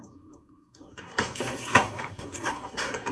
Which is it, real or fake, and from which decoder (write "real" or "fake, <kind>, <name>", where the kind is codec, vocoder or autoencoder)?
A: fake, codec, SNAC